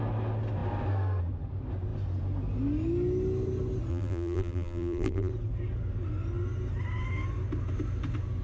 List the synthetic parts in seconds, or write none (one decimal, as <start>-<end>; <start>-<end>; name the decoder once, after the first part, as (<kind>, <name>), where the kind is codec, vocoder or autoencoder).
3.9-5.3 (vocoder, BigVGAN v2)